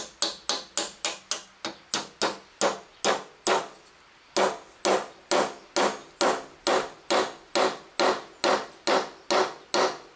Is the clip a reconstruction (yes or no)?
no